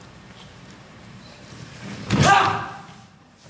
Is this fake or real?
fake